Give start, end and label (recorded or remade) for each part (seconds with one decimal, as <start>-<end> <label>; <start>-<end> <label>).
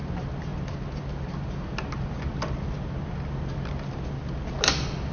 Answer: 0.0-5.1 recorded